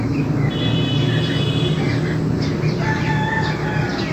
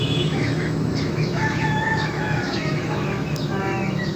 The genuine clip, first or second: first